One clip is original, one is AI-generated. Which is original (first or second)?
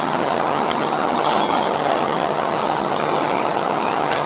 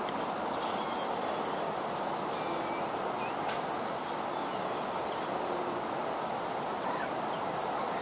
second